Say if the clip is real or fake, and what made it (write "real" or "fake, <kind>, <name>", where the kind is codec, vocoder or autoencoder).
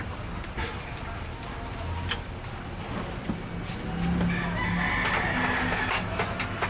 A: real